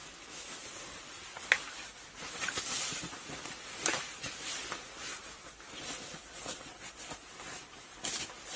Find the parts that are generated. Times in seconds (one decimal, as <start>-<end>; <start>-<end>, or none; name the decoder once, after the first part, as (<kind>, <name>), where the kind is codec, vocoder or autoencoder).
0.0-0.6 (autoencoder, DAC-VAE)